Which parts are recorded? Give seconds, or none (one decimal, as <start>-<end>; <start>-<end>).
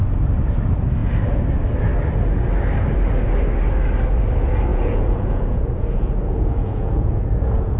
0.0-4.7